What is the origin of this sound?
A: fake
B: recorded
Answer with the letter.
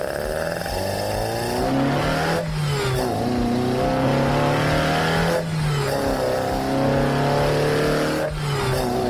B